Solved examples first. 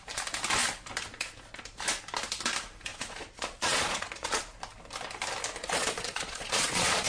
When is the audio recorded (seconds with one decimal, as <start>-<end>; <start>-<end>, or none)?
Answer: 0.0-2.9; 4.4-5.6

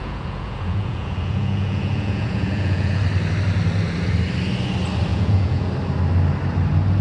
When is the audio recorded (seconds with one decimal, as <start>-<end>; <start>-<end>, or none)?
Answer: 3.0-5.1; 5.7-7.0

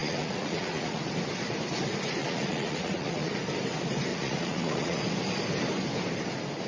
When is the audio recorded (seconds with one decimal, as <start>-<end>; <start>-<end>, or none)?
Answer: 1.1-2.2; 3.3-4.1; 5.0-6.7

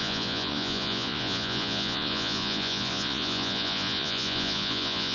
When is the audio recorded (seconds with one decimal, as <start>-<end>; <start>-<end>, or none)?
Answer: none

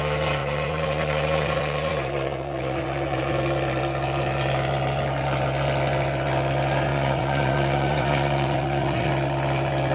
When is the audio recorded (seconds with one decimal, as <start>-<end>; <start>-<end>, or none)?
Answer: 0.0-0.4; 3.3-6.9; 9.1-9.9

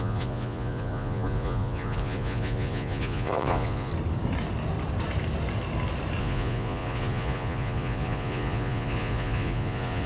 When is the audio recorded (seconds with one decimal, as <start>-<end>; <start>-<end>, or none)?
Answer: 3.9-6.2

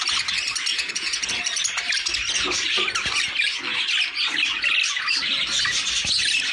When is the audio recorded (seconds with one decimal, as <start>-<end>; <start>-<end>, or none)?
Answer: 0.0-0.7; 1.3-6.5